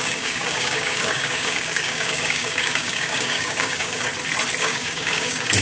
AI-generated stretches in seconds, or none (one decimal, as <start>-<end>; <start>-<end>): 0.0-4.1; 4.6-5.6